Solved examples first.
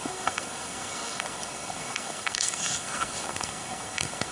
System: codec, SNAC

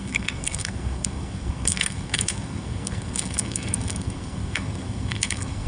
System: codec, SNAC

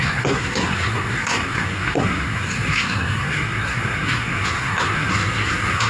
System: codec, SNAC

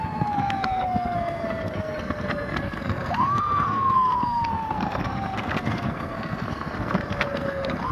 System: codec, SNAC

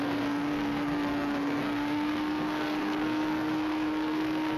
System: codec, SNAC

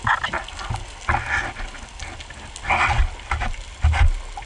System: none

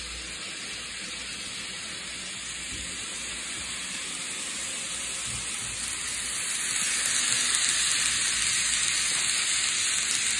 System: none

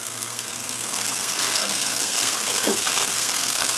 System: codec, SNAC